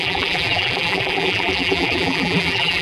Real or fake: fake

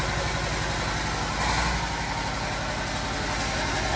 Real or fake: real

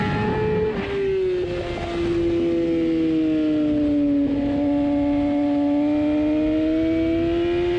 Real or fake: real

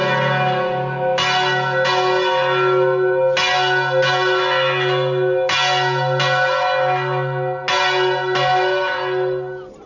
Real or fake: real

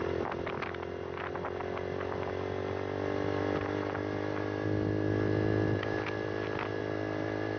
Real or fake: real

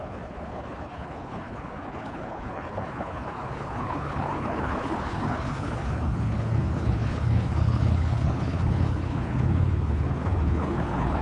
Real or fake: fake